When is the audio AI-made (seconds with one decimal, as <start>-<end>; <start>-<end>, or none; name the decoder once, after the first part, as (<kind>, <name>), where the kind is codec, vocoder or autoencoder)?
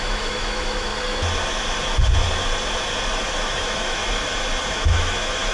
0.0-0.9 (autoencoder, DAC-VAE); 3.2-4.0; 4.7-5.5